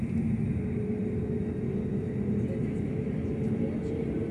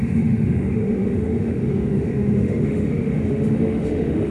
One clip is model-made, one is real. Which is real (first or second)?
first